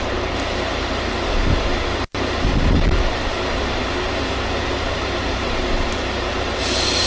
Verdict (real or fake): fake